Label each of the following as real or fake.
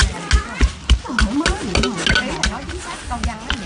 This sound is real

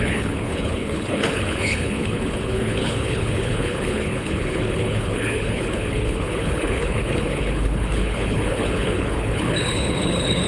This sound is fake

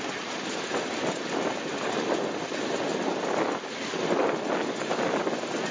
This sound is real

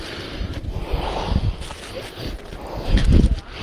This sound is real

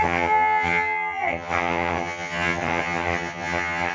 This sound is fake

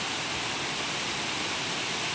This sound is real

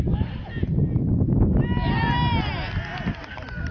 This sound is real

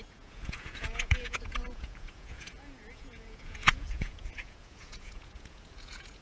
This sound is fake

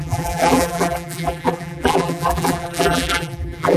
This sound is fake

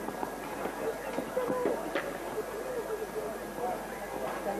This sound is real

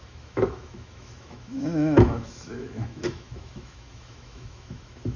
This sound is fake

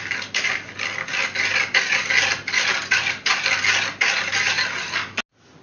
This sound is real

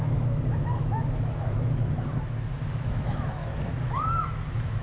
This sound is fake